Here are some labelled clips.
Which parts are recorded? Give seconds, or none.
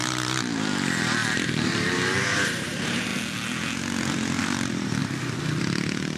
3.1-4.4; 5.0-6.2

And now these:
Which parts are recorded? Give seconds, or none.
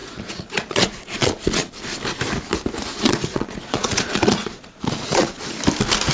1.7-2.9; 5.4-6.1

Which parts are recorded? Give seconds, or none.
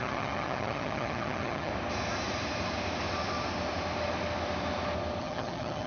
1.7-5.2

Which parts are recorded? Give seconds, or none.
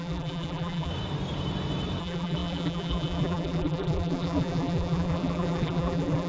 0.9-2.0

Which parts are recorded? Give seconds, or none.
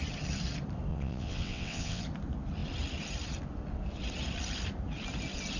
0.0-0.9; 2.0-5.6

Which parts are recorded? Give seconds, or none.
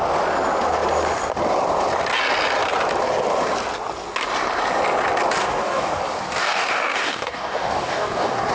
0.0-5.4; 6.0-6.4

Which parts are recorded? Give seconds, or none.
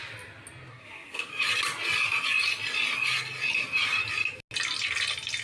0.0-0.7; 1.3-5.4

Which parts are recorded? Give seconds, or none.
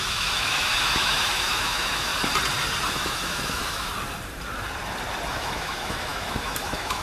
2.1-2.9; 3.9-5.3